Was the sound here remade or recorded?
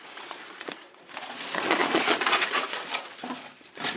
remade